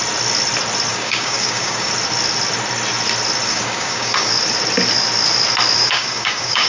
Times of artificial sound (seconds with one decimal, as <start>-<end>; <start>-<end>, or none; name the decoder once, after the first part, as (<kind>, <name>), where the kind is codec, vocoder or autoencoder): 0.9-1.9 (codec, DAC); 3.5-4.3; 5.8-6.7